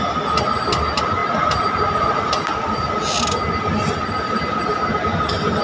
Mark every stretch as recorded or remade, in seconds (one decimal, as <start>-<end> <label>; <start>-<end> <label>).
0.0-5.6 recorded